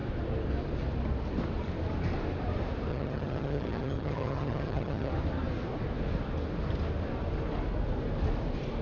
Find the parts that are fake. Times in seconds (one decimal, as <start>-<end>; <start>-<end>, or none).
2.9-5.1